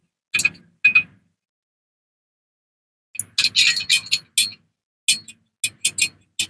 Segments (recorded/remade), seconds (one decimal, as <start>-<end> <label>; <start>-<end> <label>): 0.0-6.5 recorded